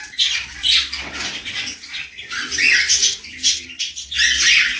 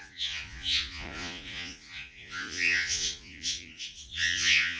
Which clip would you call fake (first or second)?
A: second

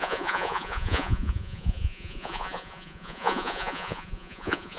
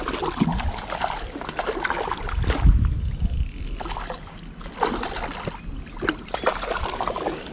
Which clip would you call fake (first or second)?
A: first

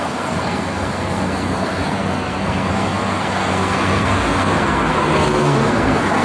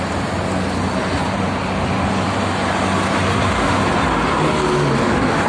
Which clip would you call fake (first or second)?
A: first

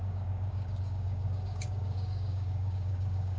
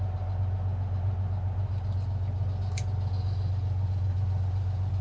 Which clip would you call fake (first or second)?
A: first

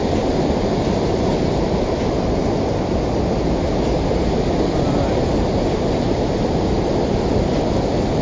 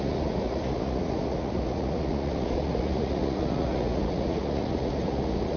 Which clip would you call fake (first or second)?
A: second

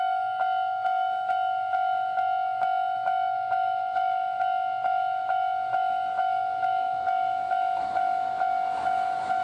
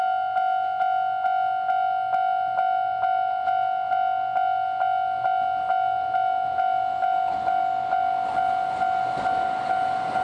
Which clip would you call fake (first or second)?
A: first